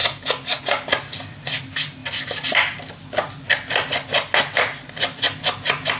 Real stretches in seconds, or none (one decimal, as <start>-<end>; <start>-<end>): 0.0-6.0